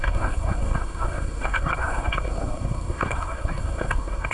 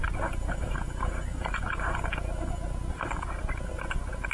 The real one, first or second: second